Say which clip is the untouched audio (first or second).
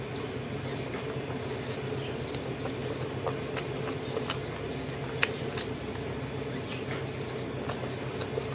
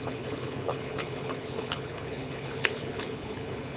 first